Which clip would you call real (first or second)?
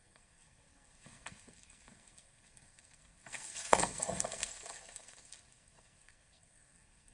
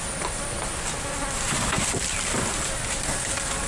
second